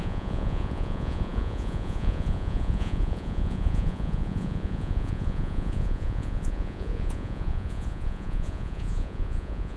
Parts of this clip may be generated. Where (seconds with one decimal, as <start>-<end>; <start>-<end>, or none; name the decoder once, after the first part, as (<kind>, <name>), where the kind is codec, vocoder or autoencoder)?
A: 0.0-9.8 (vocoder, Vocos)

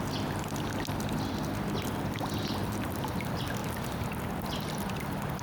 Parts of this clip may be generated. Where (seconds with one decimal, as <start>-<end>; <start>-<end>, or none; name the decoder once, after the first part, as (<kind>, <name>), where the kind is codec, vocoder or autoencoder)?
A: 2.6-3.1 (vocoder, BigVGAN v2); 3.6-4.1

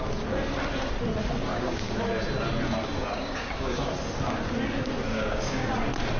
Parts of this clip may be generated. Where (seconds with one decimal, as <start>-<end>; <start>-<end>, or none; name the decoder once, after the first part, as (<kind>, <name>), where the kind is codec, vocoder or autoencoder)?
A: 1.5-2.0 (codec, DAC); 3.0-3.9; 5.1-5.7